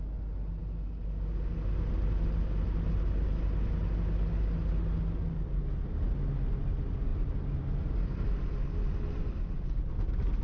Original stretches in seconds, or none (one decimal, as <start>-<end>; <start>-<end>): 0.0-10.4